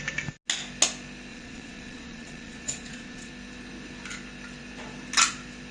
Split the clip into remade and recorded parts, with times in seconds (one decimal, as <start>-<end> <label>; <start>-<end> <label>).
0.0-1.3 recorded; 1.3-3.3 remade; 3.3-5.7 recorded